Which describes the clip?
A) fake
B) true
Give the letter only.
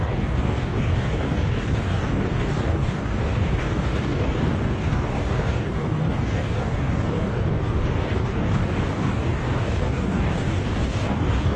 A